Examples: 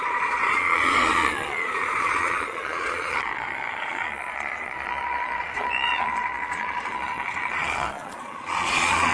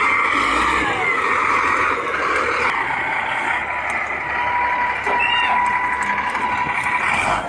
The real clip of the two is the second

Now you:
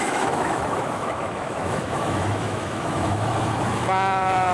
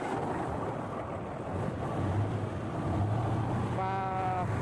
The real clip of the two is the second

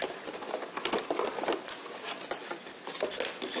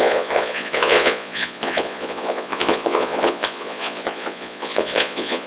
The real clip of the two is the first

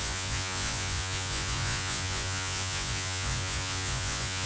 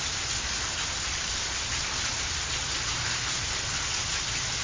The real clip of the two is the second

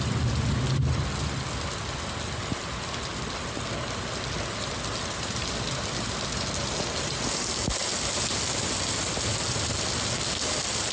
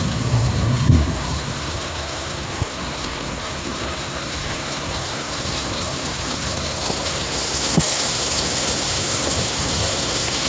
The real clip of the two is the first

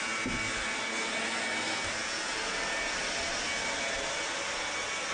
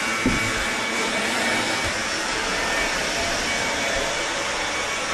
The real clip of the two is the first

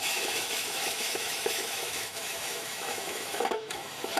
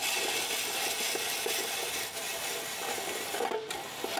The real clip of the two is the second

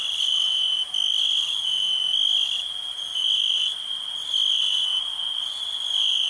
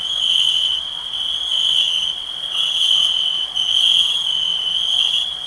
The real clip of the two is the first